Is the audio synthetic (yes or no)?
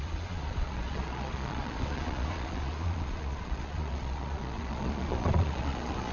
yes